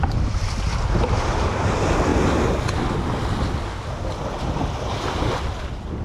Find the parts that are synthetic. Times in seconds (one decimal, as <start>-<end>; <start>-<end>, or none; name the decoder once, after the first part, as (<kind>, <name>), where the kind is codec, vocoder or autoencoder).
none